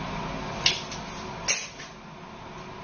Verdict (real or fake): real